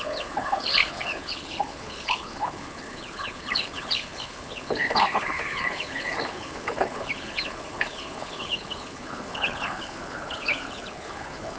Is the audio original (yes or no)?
no